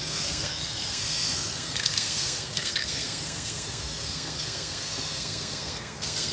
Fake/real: fake